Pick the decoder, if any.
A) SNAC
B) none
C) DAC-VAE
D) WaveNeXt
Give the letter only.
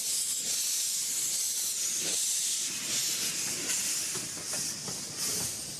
B